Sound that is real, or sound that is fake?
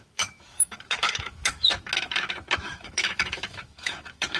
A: fake